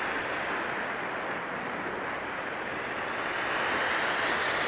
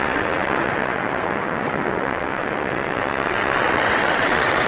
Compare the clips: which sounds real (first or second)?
first